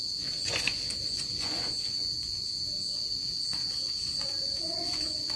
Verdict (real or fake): fake